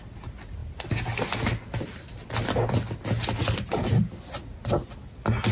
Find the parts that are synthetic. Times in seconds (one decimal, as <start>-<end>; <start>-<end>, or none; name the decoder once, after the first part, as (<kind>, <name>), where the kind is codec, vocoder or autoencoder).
none